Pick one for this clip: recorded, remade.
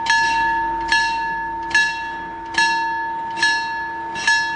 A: recorded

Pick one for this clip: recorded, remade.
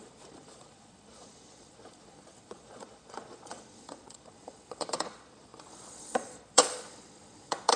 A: remade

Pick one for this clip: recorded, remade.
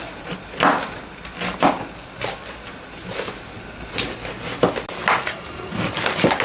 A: recorded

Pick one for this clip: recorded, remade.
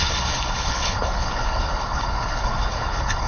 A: remade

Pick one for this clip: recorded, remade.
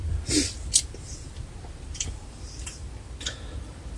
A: remade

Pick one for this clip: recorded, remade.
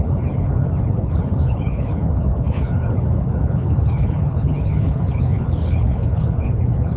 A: remade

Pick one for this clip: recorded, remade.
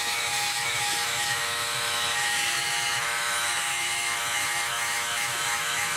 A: remade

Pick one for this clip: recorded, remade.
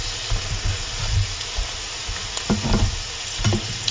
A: recorded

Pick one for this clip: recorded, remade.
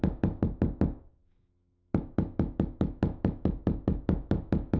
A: remade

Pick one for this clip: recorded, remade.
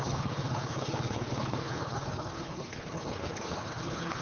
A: remade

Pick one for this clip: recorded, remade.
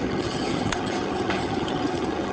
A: remade